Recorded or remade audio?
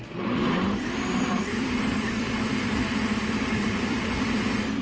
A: remade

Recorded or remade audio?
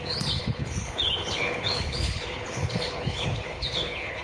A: remade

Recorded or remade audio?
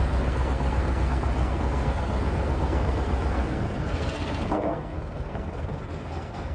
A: remade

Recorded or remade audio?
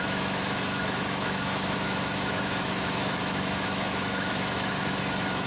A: remade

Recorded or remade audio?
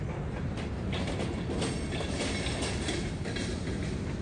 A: recorded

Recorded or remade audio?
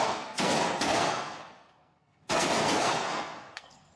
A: remade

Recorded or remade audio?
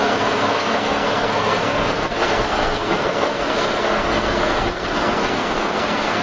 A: remade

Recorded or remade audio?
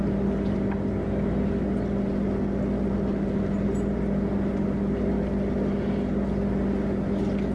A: recorded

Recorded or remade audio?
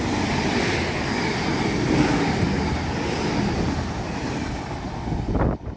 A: recorded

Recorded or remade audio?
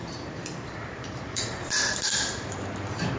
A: remade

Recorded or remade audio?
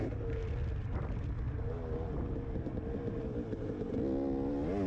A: recorded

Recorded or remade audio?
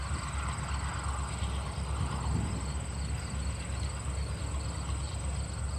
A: recorded